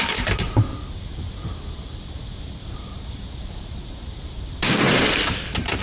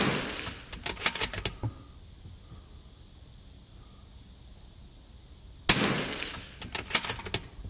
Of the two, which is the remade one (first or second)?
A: first